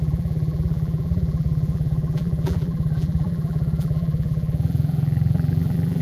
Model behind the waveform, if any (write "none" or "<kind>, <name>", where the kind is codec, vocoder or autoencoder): vocoder, BigVGAN v2